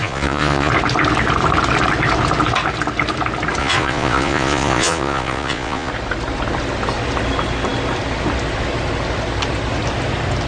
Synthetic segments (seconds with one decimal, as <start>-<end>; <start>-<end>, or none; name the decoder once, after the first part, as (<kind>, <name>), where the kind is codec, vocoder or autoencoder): 0.0-0.7 (vocoder, Vocos); 3.6-5.9